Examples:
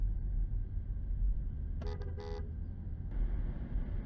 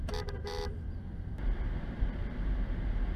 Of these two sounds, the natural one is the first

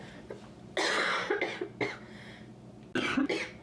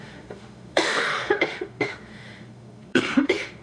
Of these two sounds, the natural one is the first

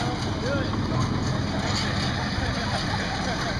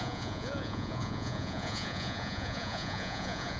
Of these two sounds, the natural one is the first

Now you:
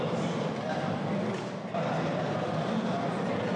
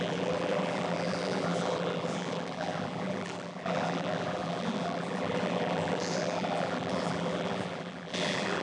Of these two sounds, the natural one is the first